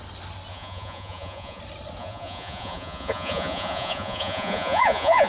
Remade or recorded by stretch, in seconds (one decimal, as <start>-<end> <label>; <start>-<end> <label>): 0.0-0.5 recorded; 0.5-1.6 remade; 1.6-2.0 recorded; 2.0-5.3 remade